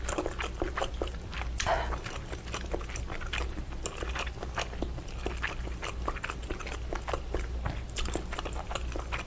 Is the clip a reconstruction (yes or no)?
no